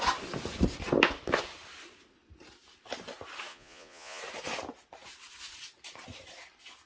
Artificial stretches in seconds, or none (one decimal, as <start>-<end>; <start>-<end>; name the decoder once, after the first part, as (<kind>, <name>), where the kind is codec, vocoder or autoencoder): 3.5-4.2 (vocoder, Vocos)